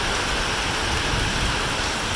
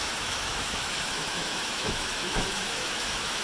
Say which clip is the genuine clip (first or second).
first